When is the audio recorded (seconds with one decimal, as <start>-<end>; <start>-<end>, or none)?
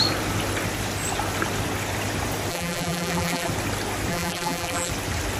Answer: 0.0-2.5; 3.5-4.1; 4.9-5.4